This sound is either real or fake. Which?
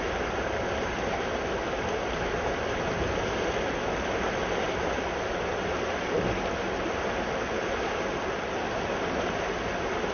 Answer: real